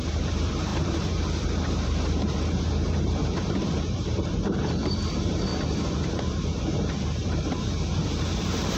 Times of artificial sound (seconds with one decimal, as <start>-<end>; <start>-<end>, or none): 0.0-5.5; 6.1-8.8